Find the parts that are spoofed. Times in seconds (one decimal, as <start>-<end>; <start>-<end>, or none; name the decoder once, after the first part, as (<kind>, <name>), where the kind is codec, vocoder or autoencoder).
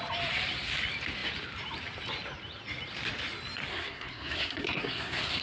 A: 3.7-5.4 (codec, SNAC)